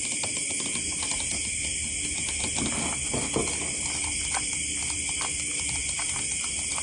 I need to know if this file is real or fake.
real